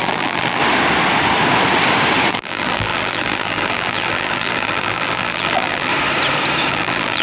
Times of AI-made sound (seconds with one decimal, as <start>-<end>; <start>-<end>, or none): 0.0-0.6; 2.3-5.9; 6.7-7.2